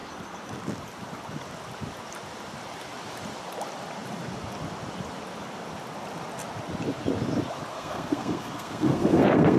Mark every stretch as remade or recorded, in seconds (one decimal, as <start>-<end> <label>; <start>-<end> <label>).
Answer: 0.0-7.7 recorded; 7.7-9.6 remade